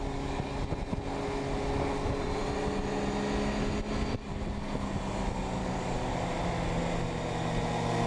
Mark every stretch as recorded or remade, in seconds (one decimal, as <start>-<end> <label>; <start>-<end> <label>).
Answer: 0.0-0.5 remade; 0.5-5.6 recorded; 5.6-6.1 remade; 6.1-8.1 recorded